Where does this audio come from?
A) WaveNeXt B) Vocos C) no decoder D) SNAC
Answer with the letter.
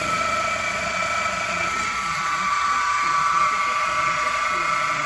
B